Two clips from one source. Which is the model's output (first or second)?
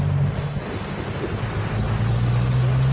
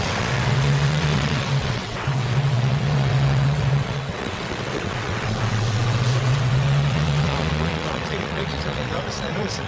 second